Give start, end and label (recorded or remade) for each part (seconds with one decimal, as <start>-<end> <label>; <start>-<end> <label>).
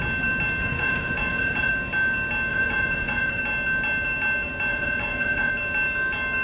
0.0-0.6 recorded; 0.6-1.7 remade; 1.7-2.5 recorded; 2.5-3.4 remade; 3.4-4.7 recorded; 4.7-5.5 remade; 5.5-6.4 recorded